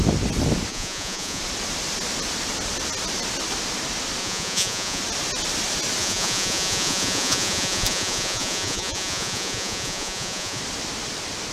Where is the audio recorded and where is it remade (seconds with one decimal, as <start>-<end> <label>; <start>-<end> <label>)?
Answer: 0.0-0.7 recorded; 0.7-1.4 remade; 1.4-4.2 recorded; 4.2-5.0 remade; 5.0-6.0 recorded; 6.0-10.6 remade; 10.6-11.5 recorded